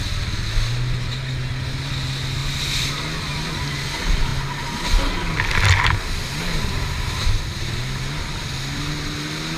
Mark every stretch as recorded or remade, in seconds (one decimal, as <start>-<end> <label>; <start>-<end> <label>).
0.0-9.6 recorded